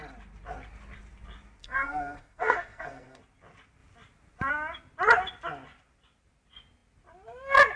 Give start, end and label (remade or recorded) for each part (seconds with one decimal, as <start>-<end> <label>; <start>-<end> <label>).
0.0-1.6 recorded; 1.6-3.2 remade; 3.2-7.8 recorded